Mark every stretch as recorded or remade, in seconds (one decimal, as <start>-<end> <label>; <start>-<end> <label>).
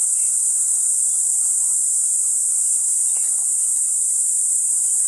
0.0-3.1 remade; 3.1-3.5 recorded; 3.5-4.5 remade; 4.5-5.1 recorded